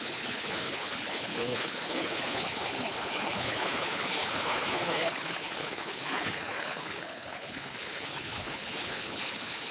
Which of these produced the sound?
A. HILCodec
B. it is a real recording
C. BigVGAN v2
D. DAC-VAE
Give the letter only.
A